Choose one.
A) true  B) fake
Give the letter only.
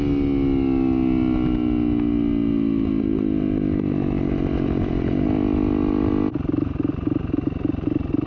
A